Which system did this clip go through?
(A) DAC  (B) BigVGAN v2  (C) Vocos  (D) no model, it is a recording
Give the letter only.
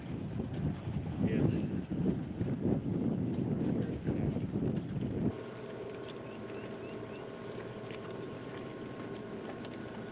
D